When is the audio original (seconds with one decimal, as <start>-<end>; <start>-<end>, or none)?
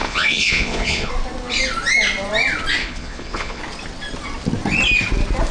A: 1.1-2.8; 3.6-5.5